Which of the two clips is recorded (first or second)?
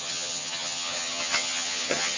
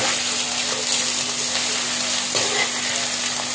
second